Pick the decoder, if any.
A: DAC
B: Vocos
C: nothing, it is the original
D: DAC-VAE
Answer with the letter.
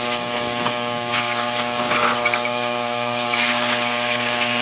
A